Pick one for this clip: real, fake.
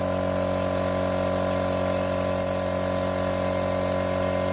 real